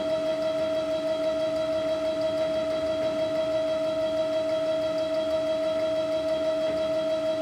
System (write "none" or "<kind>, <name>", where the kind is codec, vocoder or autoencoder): none